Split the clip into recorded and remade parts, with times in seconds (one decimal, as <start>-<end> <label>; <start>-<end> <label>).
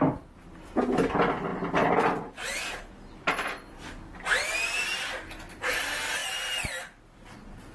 0.0-1.5 recorded; 1.5-5.8 remade; 5.8-7.7 recorded